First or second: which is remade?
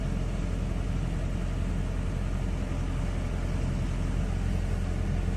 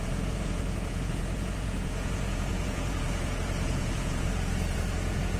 second